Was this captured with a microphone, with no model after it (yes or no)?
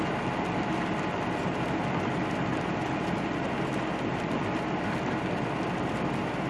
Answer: yes